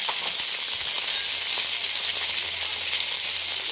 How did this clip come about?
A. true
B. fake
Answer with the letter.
A